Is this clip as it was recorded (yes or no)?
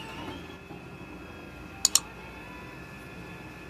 yes